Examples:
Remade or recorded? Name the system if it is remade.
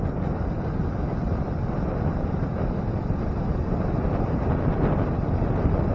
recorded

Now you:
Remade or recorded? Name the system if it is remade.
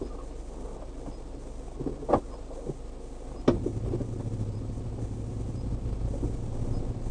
recorded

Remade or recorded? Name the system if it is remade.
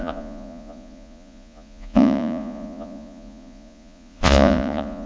remade, vocoder, Vocos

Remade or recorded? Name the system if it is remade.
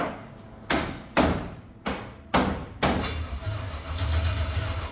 recorded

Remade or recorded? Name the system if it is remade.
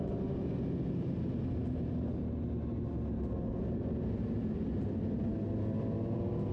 recorded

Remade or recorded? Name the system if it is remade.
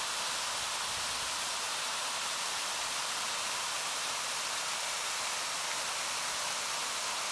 recorded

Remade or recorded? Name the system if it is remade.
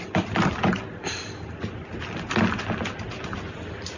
recorded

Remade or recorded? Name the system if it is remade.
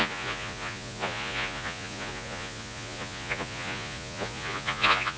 remade, vocoder, Vocos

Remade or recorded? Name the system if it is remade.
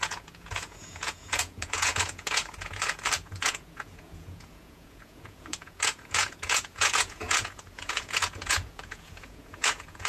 remade, vocoder, Vocos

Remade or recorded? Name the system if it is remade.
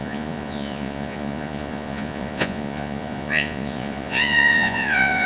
remade, vocoder, Vocos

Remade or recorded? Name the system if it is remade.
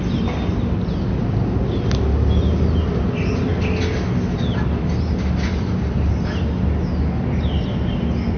recorded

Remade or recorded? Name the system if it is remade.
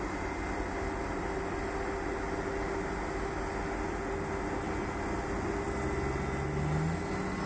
recorded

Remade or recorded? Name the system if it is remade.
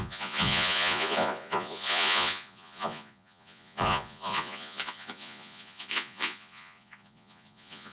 remade, vocoder, Vocos